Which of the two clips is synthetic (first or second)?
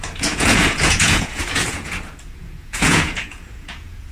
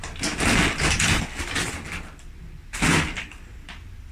first